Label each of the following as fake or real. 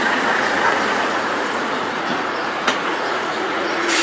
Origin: fake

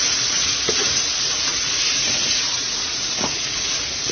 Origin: fake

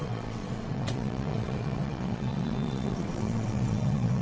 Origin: fake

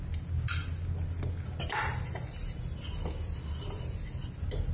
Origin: real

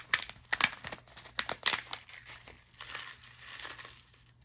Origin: real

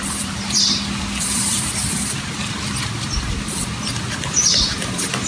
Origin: fake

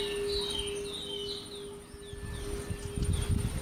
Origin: real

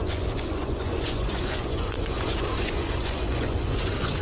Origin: fake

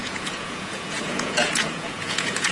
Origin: fake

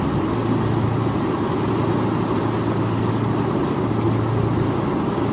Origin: real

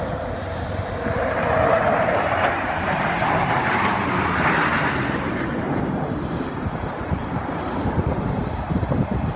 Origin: fake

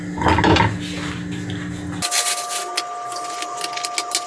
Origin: real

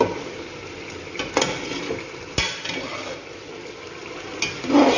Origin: real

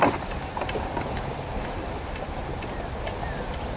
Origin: real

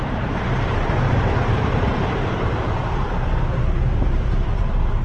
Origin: fake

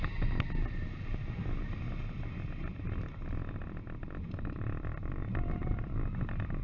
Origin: real